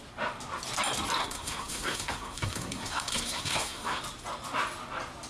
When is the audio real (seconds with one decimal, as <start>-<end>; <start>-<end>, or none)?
0.0-1.2; 4.0-5.3